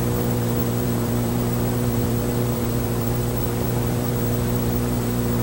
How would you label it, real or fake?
fake